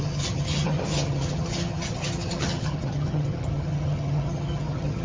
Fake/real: fake